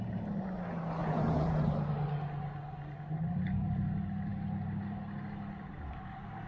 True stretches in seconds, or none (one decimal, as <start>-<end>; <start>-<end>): 0.0-1.0; 1.6-6.5